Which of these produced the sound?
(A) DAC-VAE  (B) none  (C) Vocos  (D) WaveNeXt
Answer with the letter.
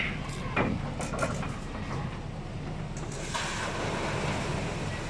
B